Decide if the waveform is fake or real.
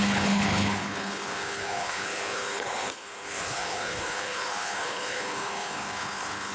fake